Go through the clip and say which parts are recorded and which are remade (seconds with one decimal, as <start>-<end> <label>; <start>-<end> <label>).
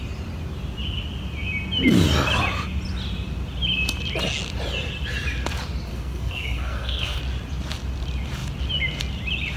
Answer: 0.0-5.9 recorded; 5.9-7.2 remade; 7.2-9.6 recorded